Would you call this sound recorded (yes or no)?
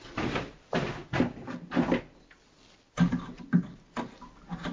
yes